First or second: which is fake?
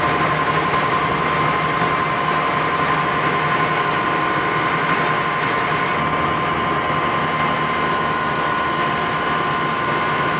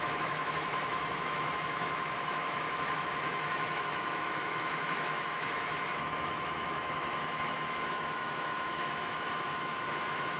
second